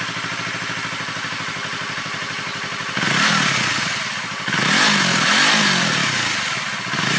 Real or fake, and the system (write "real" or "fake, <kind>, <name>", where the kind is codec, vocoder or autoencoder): real